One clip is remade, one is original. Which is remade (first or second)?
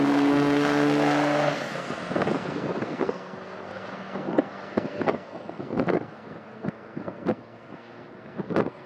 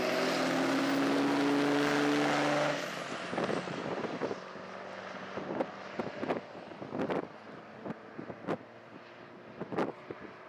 first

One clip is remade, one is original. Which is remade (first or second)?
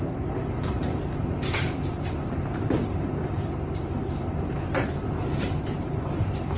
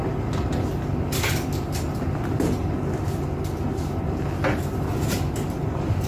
first